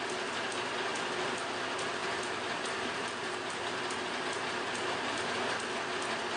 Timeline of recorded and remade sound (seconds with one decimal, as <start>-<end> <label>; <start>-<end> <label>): 0.0-2.0 recorded; 2.0-3.8 remade; 3.8-6.4 recorded